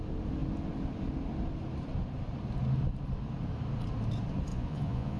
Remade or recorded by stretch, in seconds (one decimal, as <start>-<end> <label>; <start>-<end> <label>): 0.0-4.5 recorded; 4.5-5.2 remade